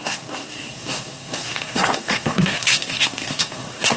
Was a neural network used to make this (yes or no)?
yes